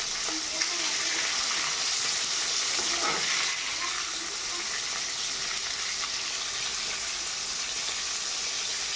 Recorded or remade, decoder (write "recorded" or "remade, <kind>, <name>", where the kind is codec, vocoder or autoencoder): recorded